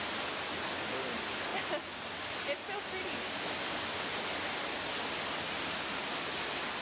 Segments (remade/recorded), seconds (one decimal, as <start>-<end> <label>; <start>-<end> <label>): 0.0-6.8 recorded